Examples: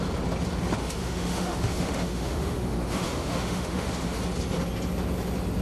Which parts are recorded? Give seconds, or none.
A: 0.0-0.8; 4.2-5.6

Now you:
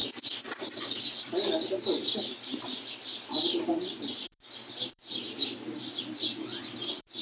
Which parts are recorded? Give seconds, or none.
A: 0.0-1.0